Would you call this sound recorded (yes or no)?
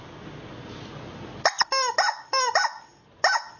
yes